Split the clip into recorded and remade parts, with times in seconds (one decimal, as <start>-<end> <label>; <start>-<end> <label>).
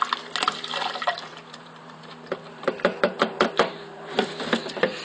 0.0-1.3 recorded; 1.3-2.0 remade; 2.0-2.5 recorded; 2.5-4.5 remade; 4.5-5.0 recorded